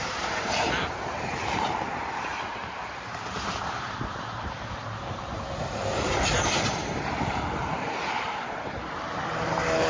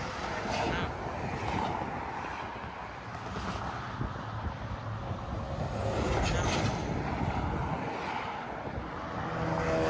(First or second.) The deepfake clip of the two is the first